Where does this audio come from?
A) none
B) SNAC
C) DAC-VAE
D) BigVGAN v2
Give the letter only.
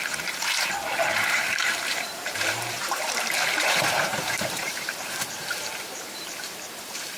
D